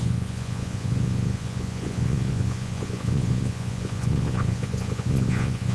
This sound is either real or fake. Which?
fake